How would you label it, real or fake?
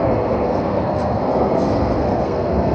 fake